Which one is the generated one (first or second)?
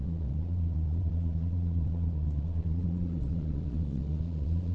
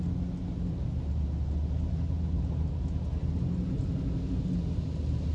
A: first